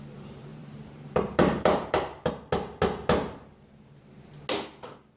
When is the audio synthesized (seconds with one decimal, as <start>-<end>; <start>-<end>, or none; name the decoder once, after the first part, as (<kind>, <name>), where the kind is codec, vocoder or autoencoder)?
0.5-2.3 (vocoder, BigVGAN v2)